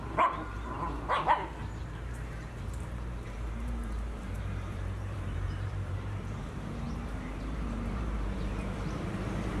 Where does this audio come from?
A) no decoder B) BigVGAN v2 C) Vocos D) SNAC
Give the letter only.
B